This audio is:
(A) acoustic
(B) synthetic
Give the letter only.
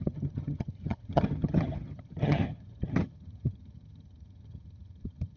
B